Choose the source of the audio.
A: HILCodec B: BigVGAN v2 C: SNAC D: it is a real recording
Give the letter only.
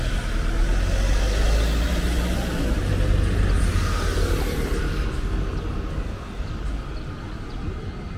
D